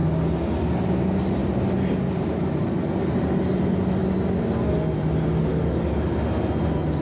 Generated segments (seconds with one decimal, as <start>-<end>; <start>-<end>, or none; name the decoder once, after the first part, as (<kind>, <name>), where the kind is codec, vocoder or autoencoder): none